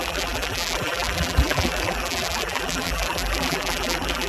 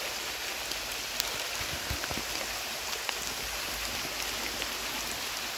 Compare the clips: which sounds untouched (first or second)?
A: second